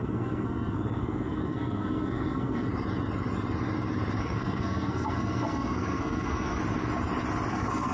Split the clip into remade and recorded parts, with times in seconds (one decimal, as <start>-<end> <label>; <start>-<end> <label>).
0.0-2.7 remade; 2.7-4.2 recorded; 4.2-6.6 remade; 6.6-7.5 recorded; 7.5-7.9 remade